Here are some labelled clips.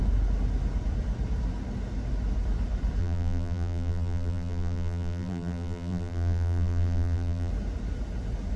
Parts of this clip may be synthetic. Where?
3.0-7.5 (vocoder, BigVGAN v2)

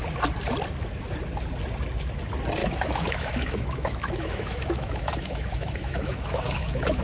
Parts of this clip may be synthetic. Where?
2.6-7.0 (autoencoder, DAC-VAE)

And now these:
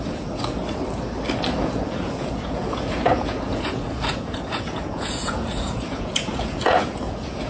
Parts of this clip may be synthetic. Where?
0.0-0.6 (vocoder, Vocos); 1.6-7.5

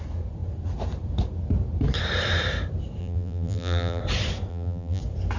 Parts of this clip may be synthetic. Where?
3.0-4.0 (vocoder, BigVGAN v2); 4.5-5.0

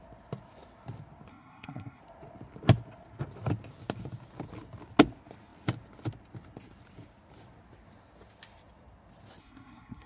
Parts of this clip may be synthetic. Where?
1.3-2.0 (codec, SNAC); 9.4-10.1

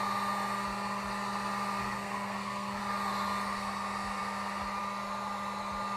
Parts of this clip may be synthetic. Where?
1.8-2.8 (codec, SNAC)